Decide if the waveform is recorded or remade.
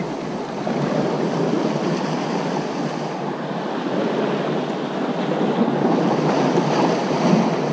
recorded